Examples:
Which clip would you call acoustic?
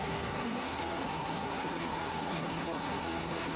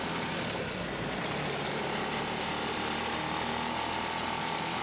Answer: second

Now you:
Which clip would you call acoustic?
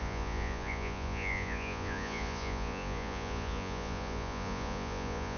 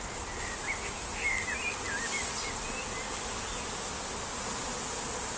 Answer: second